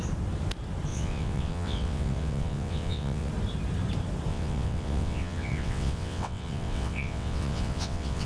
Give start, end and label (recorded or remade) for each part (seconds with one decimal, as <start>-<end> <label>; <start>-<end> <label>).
0.0-0.9 recorded; 0.9-3.3 remade; 3.3-4.3 recorded; 4.3-8.3 remade